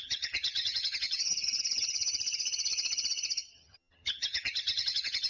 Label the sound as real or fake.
fake